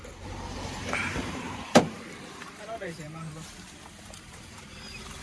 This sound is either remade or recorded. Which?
remade